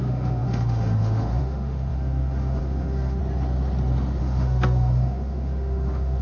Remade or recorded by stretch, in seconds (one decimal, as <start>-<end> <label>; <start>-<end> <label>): 0.0-3.2 remade; 3.2-4.2 recorded; 4.2-6.2 remade